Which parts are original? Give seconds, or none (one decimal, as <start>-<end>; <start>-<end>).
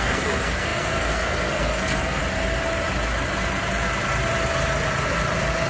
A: 2.2-5.7